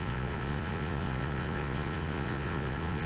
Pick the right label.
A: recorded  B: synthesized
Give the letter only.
B